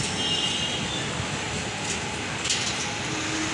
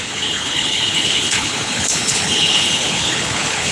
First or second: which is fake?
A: second